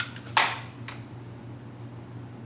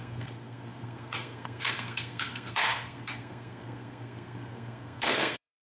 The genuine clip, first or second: first